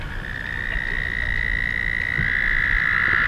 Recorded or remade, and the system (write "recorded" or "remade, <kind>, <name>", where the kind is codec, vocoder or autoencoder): recorded